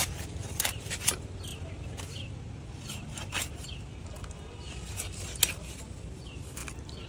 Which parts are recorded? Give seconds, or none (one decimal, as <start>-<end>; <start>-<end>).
0.0-7.1